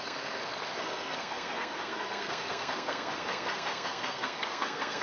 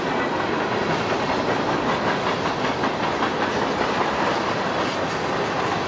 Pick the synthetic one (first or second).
first